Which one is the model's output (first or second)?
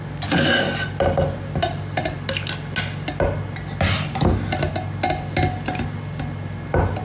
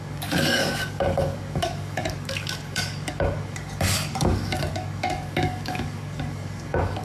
second